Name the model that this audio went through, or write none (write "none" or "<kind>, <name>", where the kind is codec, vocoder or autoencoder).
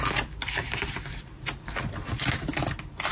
none